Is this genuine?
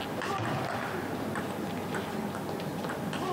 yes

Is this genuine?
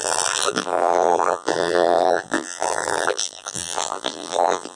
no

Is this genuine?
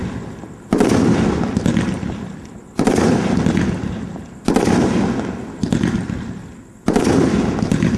yes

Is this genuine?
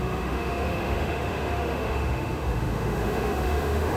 no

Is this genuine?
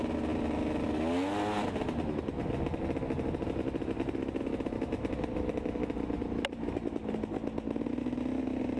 yes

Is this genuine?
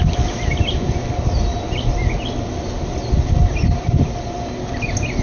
yes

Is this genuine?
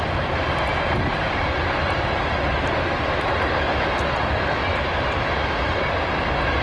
yes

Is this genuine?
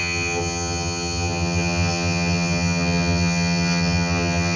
no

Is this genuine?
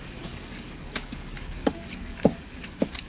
no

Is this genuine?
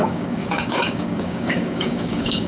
no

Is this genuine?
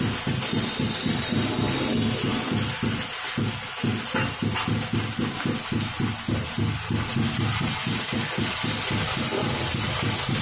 yes